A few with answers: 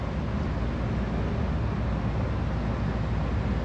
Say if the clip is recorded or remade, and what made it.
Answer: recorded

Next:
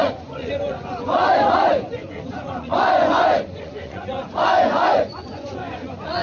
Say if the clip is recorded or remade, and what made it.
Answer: remade, vocoder, Vocos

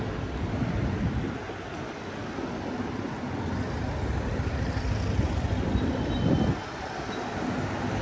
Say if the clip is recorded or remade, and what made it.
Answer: recorded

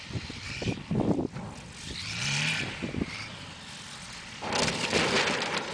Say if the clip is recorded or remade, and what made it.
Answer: remade, vocoder, BigVGAN v2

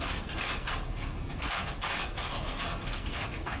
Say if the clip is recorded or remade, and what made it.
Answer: remade, codec, SNAC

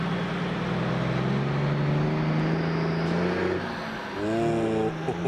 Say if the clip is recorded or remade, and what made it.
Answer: recorded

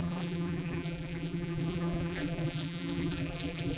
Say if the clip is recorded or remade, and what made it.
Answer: remade, vocoder, BigVGAN v2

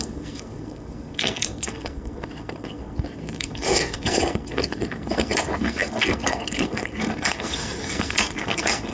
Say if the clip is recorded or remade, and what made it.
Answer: remade, codec, SNAC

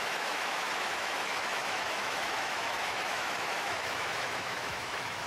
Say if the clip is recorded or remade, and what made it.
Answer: remade, autoencoder, DAC-VAE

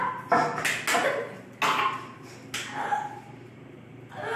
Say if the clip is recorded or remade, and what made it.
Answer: recorded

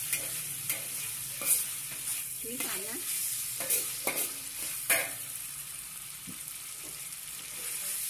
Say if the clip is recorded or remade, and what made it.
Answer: remade, vocoder, BigVGAN v2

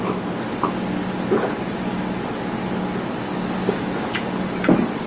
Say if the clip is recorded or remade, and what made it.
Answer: recorded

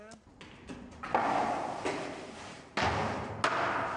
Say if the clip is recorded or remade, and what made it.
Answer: recorded